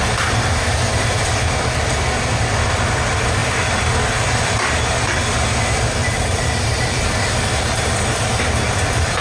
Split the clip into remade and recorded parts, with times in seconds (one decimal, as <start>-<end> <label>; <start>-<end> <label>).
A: 0.0-6.0 recorded; 6.0-7.0 remade; 7.0-9.2 recorded